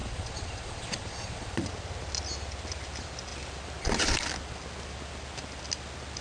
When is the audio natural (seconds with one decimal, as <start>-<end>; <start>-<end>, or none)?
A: 1.7-6.2